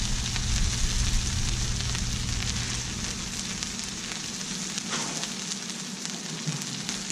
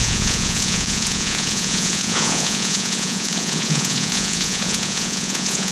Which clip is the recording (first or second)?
first